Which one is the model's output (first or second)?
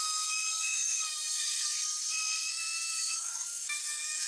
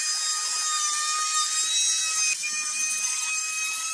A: first